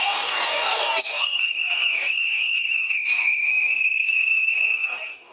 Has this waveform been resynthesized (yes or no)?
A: yes